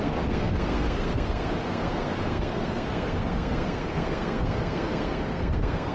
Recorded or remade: remade